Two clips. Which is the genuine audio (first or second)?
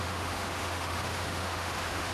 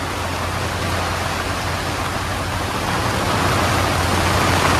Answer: second